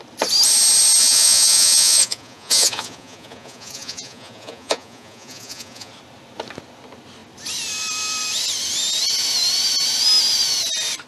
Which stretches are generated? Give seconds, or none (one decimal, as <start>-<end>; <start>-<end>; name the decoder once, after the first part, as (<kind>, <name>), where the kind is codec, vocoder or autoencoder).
1.0-5.9 (vocoder, Vocos)